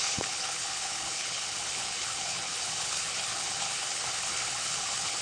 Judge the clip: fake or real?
fake